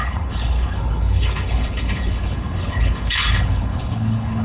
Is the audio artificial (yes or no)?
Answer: yes